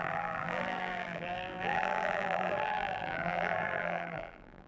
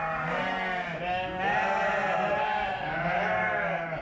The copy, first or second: first